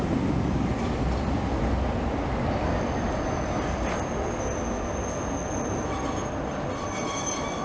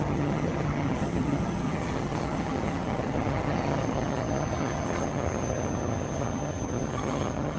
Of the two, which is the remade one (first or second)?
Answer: second